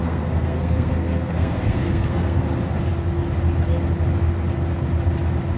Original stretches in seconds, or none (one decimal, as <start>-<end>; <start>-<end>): 2.4-5.6

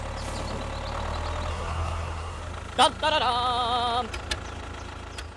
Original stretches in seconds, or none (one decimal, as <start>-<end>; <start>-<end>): 0.0-1.5; 2.4-5.4

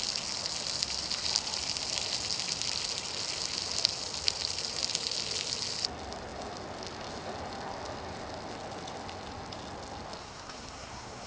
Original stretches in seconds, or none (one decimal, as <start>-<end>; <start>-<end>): 0.0-10.2

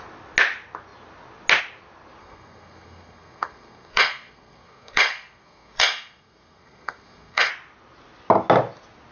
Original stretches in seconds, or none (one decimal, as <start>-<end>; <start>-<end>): 0.0-2.2; 7.5-9.1